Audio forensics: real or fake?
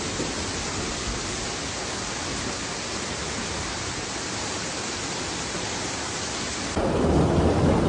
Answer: real